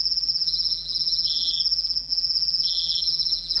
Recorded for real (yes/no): no